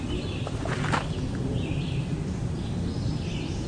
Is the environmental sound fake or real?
real